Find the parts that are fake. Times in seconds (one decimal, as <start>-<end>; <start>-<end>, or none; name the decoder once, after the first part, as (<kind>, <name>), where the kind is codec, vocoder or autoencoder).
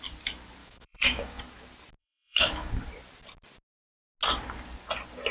0.6-1.4 (autoencoder, DAC-VAE); 2.0-2.7